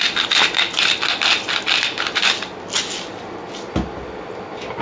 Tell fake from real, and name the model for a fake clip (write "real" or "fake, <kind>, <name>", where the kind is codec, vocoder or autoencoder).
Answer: real